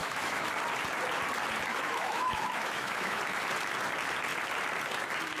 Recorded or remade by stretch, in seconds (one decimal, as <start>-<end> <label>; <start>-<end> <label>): 0.0-0.5 remade; 0.5-1.7 recorded; 1.7-3.2 remade; 3.2-5.4 recorded